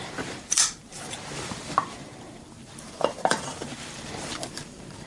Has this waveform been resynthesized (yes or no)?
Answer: yes